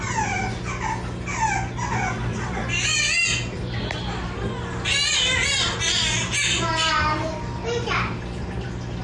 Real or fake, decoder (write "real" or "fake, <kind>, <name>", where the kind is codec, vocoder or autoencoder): real